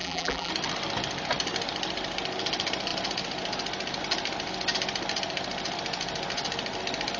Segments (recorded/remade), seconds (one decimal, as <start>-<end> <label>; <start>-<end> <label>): 0.0-0.5 remade; 0.5-7.2 recorded